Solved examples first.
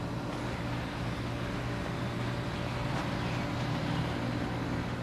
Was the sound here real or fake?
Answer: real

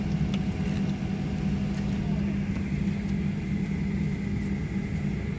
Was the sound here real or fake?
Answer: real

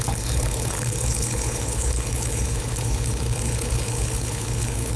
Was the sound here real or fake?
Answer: fake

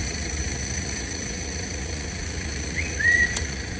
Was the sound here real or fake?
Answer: fake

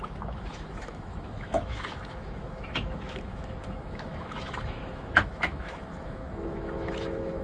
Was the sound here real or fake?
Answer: fake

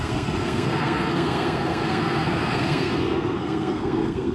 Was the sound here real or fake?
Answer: fake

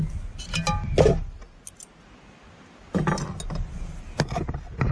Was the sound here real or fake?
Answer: real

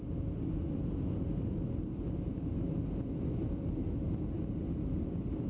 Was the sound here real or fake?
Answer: real